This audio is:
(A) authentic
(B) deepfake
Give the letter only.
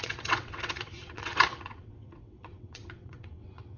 B